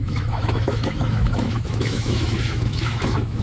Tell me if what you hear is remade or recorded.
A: remade